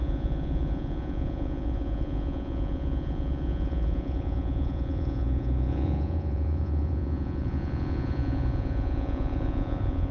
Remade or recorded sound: remade